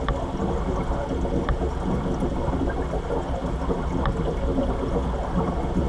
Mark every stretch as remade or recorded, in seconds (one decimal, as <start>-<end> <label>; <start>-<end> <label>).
0.0-5.9 recorded